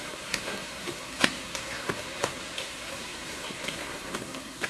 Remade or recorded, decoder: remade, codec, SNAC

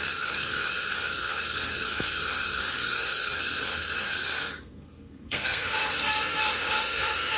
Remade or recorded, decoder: remade, codec, SNAC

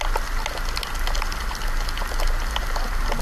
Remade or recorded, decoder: recorded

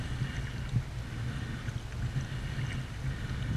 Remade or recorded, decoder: recorded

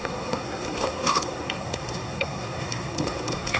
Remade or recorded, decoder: remade, codec, SNAC